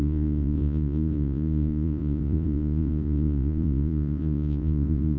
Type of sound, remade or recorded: remade